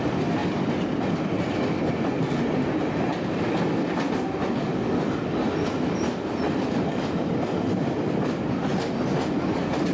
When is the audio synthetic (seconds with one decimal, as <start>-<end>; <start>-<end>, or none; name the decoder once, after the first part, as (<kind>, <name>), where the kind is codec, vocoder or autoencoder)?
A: none